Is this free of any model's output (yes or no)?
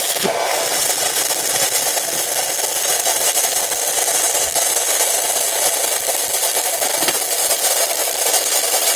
yes